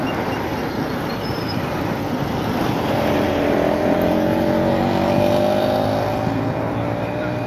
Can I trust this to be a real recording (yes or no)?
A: no